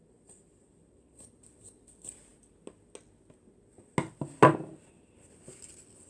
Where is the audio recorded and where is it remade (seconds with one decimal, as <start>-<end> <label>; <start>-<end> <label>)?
0.0-6.1 recorded

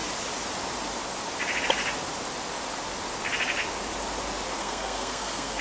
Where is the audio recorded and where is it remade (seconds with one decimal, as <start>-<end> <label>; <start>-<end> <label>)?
0.0-4.6 recorded; 4.6-5.6 remade